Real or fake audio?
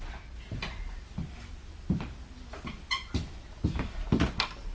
real